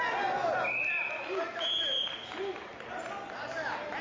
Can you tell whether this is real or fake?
real